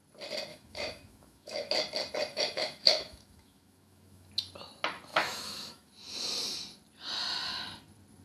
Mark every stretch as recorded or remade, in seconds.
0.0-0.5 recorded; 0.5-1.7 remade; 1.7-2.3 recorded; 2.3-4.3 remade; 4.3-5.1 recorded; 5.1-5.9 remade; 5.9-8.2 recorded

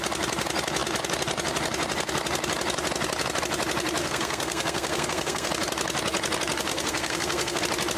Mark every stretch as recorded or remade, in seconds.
0.0-4.0 recorded; 4.0-5.5 remade; 5.5-6.7 recorded; 6.7-7.6 remade; 7.6-8.0 recorded

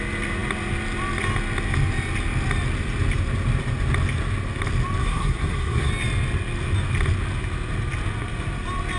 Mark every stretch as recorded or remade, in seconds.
0.0-5.0 recorded; 5.0-5.9 remade; 5.9-9.0 recorded

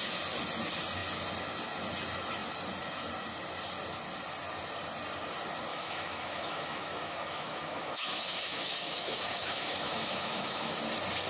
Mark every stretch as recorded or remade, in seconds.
0.0-5.7 recorded; 5.7-10.8 remade; 10.8-11.3 recorded

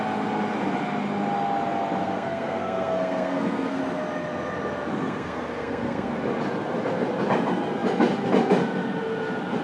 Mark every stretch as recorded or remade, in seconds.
0.0-2.0 recorded; 2.0-3.8 remade; 3.8-4.9 recorded; 4.9-6.1 remade; 6.1-9.6 recorded

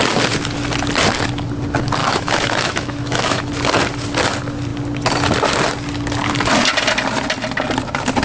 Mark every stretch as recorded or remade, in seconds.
0.0-2.0 recorded; 2.0-3.5 remade; 3.5-8.2 recorded